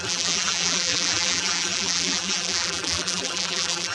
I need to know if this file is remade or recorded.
remade